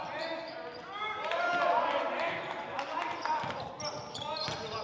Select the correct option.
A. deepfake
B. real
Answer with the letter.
B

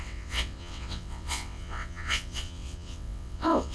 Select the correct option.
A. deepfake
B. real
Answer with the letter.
A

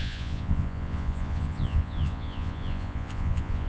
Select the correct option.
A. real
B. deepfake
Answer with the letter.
B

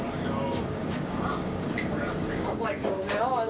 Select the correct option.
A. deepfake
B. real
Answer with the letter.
A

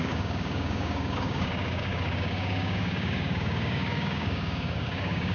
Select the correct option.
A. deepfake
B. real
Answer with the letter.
A